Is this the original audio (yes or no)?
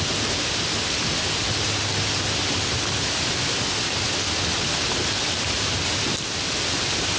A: yes